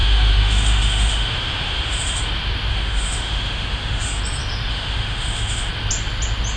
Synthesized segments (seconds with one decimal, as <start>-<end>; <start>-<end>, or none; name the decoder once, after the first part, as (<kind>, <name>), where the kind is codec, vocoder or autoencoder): 0.0-2.2 (autoencoder, DAC-VAE); 2.7-4.2; 4.7-5.7